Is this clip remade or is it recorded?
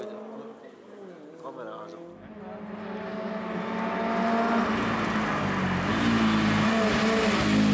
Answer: recorded